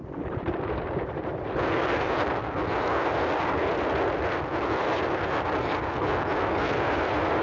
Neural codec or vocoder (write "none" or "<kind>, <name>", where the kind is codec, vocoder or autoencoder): none